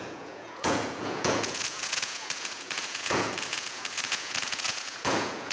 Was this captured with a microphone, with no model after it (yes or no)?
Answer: no